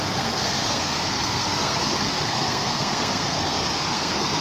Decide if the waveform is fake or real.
fake